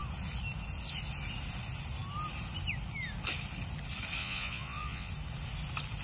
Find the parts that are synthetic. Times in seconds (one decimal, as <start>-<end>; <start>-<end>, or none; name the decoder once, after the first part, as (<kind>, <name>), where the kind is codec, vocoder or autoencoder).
4.2-5.1 (vocoder, Vocos)